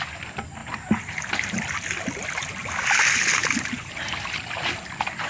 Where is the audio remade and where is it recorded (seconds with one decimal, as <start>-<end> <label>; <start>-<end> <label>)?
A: 0.0-0.6 recorded; 0.6-1.6 remade; 1.6-5.3 recorded